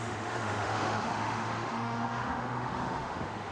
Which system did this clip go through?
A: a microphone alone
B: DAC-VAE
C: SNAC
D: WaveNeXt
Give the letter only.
B